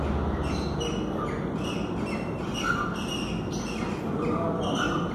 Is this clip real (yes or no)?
yes